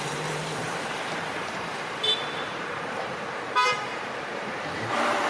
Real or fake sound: fake